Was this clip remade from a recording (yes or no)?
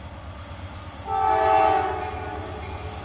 no